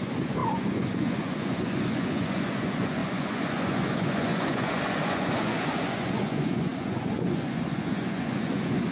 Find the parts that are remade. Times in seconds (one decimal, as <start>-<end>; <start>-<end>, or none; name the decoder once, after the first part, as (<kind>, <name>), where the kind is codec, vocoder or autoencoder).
0.0-8.9 (vocoder, Vocos)